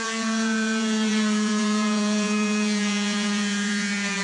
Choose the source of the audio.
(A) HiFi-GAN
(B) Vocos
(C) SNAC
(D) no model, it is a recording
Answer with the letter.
B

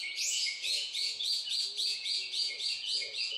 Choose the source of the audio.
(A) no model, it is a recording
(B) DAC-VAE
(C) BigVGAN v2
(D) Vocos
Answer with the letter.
D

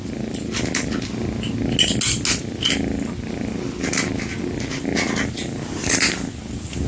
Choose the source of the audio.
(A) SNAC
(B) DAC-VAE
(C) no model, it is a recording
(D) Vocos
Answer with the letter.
C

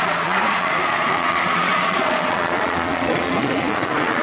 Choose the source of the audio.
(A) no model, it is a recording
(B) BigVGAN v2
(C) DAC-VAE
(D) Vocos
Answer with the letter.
D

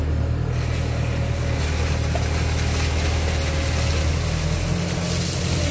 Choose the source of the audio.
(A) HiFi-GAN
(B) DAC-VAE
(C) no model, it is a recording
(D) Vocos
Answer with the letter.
C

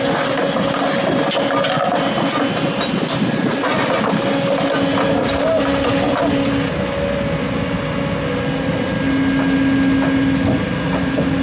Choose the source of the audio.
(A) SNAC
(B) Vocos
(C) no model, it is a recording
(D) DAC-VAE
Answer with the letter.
C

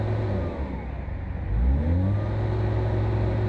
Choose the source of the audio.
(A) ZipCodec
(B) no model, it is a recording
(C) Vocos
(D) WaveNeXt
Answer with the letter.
B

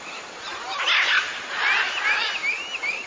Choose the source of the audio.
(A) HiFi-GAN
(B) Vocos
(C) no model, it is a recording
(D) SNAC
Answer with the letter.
C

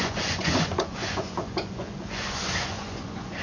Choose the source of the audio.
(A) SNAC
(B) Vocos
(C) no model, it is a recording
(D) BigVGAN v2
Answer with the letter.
B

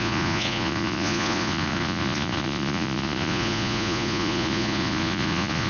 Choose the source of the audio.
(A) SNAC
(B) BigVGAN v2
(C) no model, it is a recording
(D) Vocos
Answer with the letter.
D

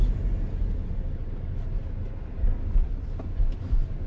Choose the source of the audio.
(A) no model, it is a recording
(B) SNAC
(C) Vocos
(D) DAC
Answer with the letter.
A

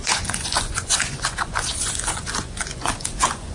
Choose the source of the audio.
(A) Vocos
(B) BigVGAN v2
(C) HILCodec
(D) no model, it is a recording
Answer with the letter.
A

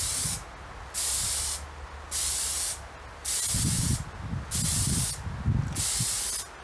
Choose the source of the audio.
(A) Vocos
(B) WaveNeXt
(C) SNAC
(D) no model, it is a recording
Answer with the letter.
D